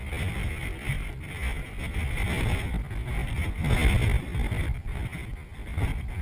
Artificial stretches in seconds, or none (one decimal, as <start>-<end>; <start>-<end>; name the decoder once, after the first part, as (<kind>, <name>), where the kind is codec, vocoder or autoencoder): none